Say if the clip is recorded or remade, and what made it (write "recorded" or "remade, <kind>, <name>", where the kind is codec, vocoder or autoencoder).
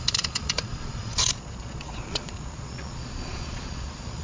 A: remade, vocoder, Vocos